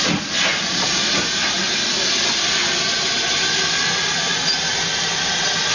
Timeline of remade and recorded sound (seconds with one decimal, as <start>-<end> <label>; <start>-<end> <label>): 0.0-5.7 recorded